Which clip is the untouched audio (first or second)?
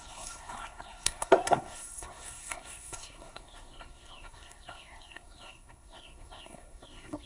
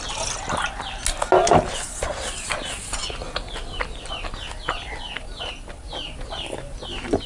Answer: second